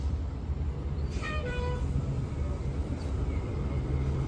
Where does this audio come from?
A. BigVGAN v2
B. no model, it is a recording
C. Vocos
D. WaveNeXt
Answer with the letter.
A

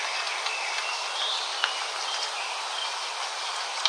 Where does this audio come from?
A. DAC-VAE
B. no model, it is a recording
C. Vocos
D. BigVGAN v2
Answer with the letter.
B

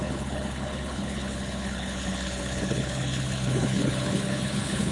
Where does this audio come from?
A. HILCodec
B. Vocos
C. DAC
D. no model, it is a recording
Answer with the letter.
A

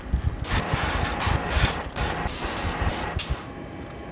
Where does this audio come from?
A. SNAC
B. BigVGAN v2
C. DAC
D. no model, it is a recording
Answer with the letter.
D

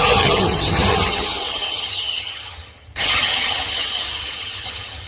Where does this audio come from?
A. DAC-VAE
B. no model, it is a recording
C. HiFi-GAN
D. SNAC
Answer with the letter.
C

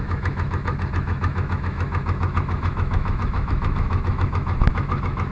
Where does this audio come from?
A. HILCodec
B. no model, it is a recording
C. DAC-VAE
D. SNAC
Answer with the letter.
C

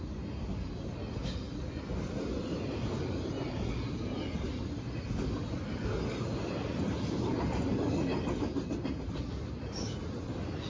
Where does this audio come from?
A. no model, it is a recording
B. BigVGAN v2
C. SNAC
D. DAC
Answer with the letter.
A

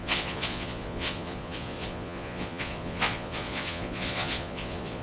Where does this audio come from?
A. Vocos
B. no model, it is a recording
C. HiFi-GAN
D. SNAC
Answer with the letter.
A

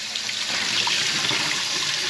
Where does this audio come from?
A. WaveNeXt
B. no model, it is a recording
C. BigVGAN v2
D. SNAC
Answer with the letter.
B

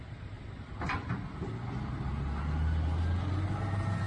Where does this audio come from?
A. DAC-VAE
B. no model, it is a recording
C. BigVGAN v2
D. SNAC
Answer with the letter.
B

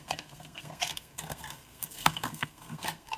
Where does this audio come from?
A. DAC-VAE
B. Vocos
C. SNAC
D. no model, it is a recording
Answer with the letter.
C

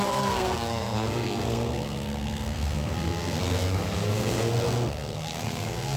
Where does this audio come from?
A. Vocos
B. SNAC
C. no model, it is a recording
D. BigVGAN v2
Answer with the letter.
B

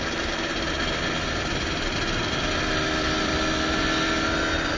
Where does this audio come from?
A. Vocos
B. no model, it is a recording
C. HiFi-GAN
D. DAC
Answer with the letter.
B